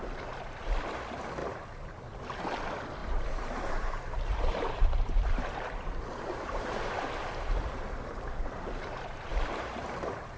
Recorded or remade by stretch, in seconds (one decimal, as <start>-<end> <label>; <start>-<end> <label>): 0.0-1.4 recorded; 1.4-2.2 remade; 2.2-3.0 recorded; 3.0-6.5 remade; 6.5-9.3 recorded; 9.3-10.4 remade